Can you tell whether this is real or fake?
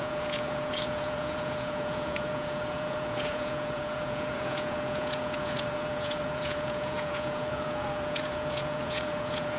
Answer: fake